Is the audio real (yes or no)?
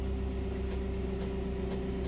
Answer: yes